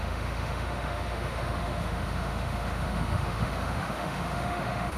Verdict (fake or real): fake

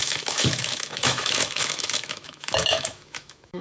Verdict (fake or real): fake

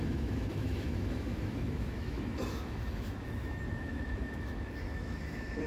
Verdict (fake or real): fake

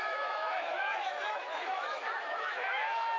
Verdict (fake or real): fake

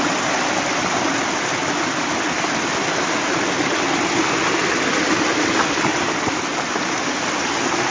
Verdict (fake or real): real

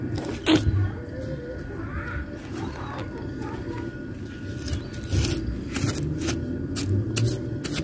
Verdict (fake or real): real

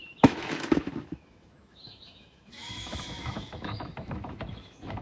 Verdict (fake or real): fake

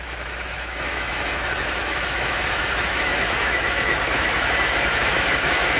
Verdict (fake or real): fake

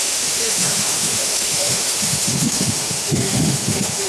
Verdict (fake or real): fake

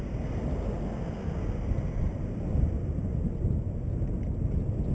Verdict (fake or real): real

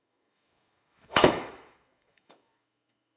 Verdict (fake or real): fake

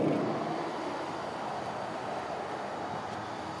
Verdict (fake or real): real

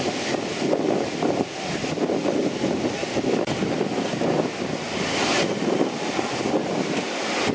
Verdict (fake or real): real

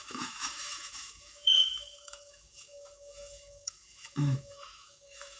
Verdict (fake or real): fake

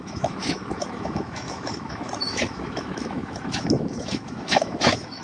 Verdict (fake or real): fake